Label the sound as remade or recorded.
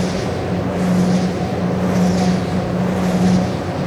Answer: recorded